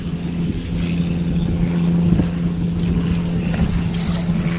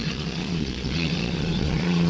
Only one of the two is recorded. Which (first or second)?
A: first